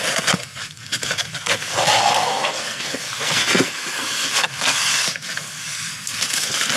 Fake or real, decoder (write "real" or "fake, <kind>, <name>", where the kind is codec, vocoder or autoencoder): fake, codec, SNAC